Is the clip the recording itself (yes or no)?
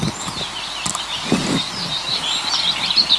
yes